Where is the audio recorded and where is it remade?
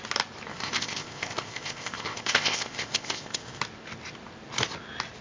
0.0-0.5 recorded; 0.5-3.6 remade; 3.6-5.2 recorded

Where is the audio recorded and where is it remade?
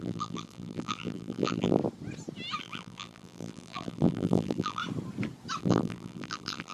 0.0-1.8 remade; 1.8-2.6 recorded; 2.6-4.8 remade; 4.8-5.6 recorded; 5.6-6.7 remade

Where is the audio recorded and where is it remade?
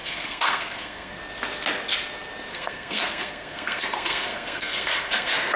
0.0-1.2 remade; 1.2-2.5 recorded; 2.5-5.6 remade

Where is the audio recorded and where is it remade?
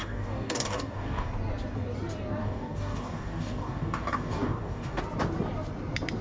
0.0-1.3 remade; 1.3-2.4 recorded; 2.4-5.0 remade; 5.0-6.2 recorded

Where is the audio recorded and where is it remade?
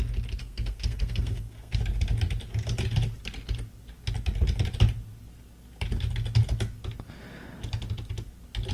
0.0-0.4 recorded; 0.4-1.8 remade; 1.8-8.7 recorded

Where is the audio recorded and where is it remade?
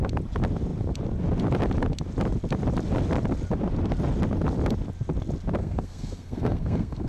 0.0-5.6 recorded; 5.6-7.1 remade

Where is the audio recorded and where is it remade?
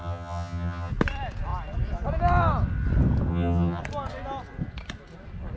0.0-0.9 remade; 0.9-3.3 recorded; 3.3-3.8 remade; 3.8-5.6 recorded